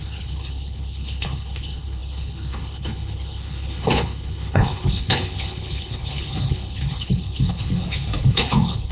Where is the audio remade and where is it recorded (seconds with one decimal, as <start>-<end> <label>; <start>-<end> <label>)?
0.0-8.9 remade